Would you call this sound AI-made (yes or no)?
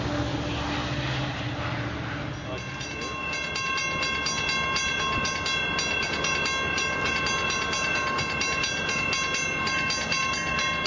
no